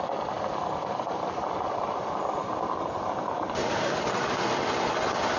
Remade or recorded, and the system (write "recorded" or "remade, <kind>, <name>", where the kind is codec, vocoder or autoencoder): recorded